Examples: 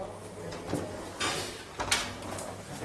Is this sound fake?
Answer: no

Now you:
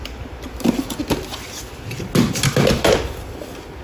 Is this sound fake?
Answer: no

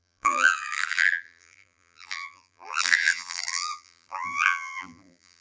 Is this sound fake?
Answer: yes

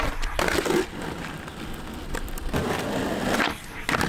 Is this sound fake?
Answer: no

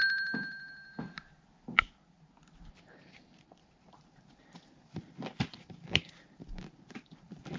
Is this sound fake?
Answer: yes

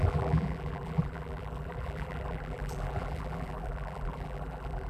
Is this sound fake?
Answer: yes